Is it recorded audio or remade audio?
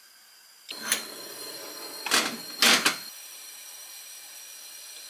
recorded